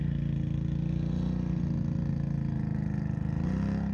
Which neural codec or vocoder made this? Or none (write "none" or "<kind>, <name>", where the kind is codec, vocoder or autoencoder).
none